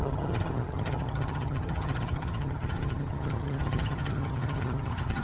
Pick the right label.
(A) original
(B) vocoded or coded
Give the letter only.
B